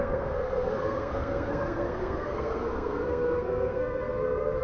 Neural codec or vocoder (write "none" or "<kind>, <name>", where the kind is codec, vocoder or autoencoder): codec, SNAC